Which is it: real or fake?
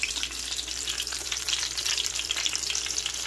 fake